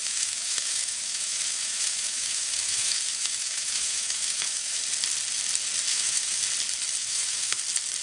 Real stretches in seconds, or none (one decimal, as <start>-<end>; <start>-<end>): 4.8-5.9; 6.4-7.0; 7.6-8.0